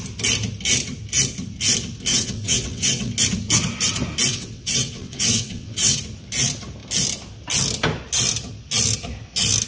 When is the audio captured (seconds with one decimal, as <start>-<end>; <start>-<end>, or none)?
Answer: 0.0-2.1; 3.1-4.3; 6.0-9.7

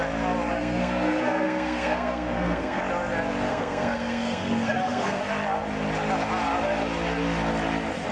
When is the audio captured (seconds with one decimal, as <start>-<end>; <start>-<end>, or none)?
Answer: 0.0-0.5; 2.8-3.5; 5.2-8.1

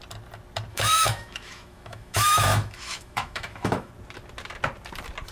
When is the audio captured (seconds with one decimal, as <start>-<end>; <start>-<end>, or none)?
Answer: 0.0-0.7; 3.9-5.3

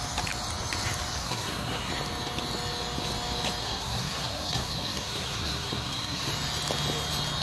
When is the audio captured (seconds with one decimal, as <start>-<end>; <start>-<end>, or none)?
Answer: 0.0-1.2; 1.9-3.6; 6.3-7.4